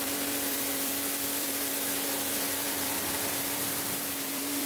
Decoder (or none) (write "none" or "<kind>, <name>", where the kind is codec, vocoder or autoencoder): vocoder, BigVGAN v2